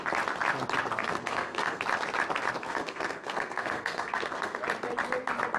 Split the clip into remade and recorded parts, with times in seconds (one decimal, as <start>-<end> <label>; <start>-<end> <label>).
0.0-1.0 recorded; 1.0-1.8 remade; 1.8-2.6 recorded; 2.6-4.6 remade; 4.6-5.6 recorded